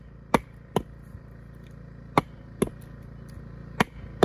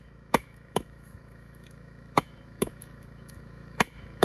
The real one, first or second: first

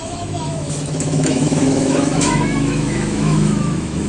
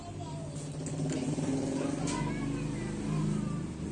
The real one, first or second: second